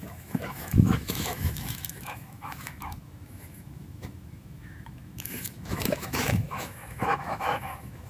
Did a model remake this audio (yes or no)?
yes